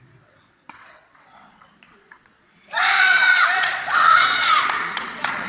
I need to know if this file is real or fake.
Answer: fake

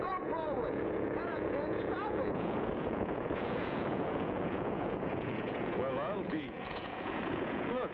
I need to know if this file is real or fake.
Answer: fake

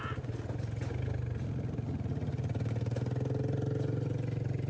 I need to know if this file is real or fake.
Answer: real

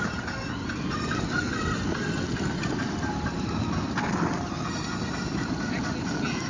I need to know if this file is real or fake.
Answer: real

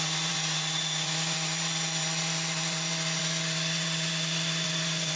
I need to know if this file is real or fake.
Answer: fake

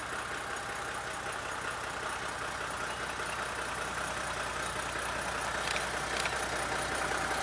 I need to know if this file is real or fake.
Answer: real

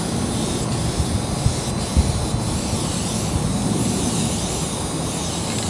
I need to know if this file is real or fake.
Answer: real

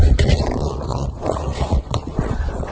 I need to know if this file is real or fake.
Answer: fake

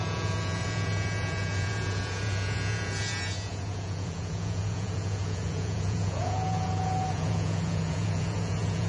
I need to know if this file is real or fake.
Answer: fake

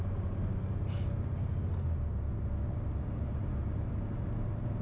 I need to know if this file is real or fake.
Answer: real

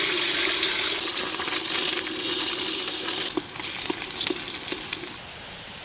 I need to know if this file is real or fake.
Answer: real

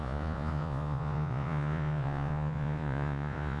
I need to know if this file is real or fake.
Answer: fake